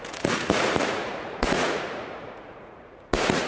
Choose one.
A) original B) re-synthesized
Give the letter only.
B